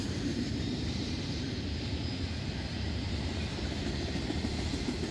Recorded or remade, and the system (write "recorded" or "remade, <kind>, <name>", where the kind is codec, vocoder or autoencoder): remade, vocoder, BigVGAN v2